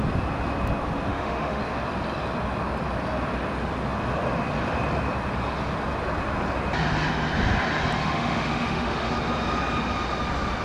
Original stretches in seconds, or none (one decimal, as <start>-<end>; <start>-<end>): 0.0-1.1; 1.6-8.0; 9.1-10.6